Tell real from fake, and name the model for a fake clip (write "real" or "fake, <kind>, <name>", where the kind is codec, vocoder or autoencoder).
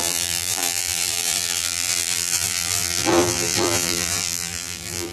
fake, vocoder, BigVGAN v2